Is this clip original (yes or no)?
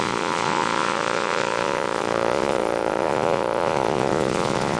no